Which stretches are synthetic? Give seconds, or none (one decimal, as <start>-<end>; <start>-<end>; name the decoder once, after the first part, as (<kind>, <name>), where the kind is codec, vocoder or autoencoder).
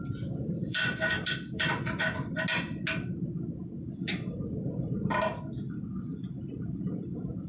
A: 0.4-1.8 (vocoder, BigVGAN v2); 6.1-7.0